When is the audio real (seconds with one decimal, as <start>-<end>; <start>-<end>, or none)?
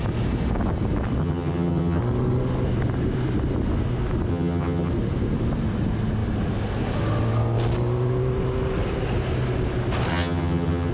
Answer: 0.0-1.2; 2.0-4.3; 4.9-10.1